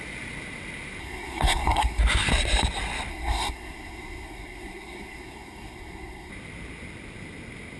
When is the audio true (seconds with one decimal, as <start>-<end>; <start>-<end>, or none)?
0.0-1.0; 2.0-3.1; 6.3-7.8